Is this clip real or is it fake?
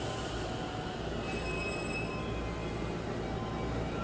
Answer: real